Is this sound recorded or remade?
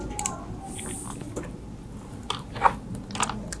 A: recorded